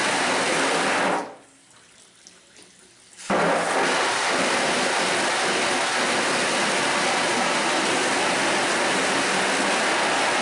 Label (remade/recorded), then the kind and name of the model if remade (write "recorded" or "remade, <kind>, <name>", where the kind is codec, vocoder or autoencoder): recorded